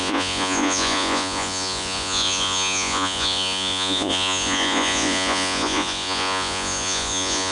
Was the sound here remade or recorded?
remade